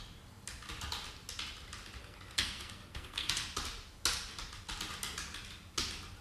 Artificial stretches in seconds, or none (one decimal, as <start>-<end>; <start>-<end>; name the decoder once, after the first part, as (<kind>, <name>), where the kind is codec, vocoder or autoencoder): 2.0-3.3 (codec, SNAC)